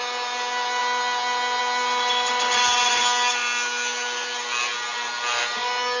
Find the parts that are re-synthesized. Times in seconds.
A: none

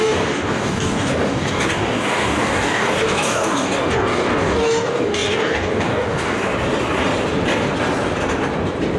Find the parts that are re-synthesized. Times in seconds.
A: 0.0-6.5

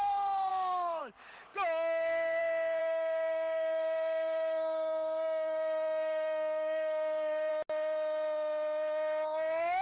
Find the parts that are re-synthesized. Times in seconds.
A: 0.5-1.0; 1.5-2.4; 2.8-7.5

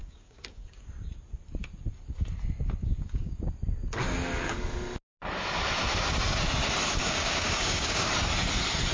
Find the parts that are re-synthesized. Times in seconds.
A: 0.0-0.9; 2.8-3.4; 7.0-8.1

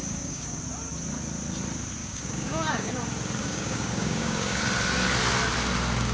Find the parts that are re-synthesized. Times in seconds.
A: 0.0-0.6; 2.0-2.9; 3.4-4.6